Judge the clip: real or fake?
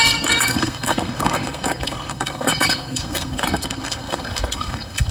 fake